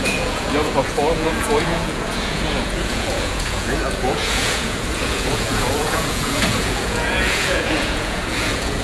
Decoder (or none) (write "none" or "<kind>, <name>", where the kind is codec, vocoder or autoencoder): vocoder, Vocos